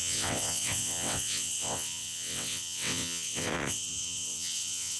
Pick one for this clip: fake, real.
fake